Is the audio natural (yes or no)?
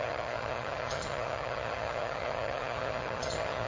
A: no